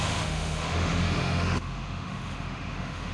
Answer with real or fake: fake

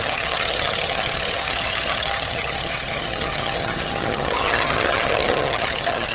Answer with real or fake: fake